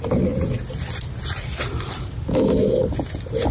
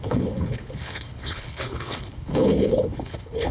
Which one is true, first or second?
first